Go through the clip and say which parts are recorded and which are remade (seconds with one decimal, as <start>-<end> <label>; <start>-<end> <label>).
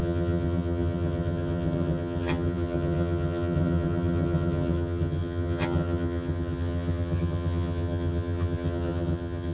0.0-9.5 remade